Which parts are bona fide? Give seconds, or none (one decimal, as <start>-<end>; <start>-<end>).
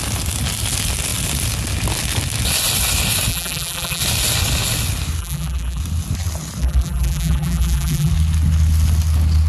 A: 0.0-3.3; 4.0-5.2; 5.8-6.6; 8.1-9.5